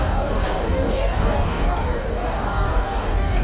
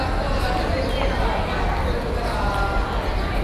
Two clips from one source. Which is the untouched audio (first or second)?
second